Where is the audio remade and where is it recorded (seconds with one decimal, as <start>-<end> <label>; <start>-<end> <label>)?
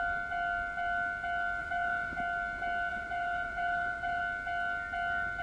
0.0-1.6 recorded; 1.6-2.2 remade; 2.2-2.9 recorded; 2.9-4.2 remade; 4.2-5.4 recorded